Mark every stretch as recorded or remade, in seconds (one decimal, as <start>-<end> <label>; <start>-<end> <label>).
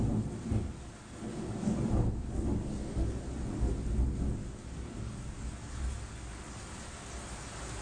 0.0-1.3 recorded; 1.3-3.2 remade; 3.2-4.4 recorded; 4.4-6.5 remade; 6.5-7.8 recorded